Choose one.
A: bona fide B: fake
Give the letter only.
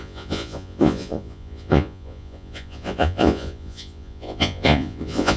B